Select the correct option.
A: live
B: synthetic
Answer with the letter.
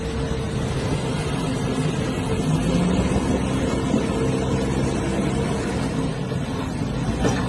A